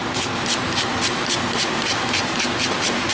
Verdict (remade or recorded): remade